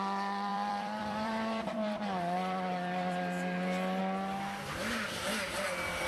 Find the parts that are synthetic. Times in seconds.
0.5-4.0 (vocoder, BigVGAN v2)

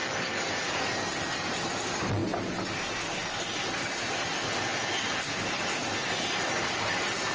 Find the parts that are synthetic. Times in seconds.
none

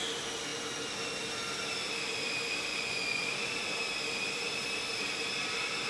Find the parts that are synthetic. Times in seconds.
2.7-3.2 (vocoder, Vocos)

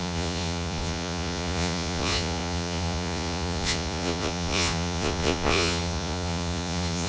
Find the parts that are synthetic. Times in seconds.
0.0-7.1 (vocoder, Vocos)